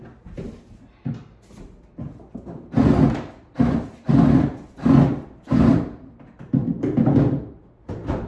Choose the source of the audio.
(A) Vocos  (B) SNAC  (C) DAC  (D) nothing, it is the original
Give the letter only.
D